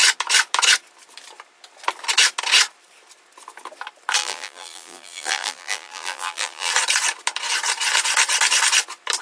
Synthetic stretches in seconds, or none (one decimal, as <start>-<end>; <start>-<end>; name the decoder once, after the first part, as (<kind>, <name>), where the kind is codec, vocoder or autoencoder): 4.2-6.7 (vocoder, BigVGAN v2)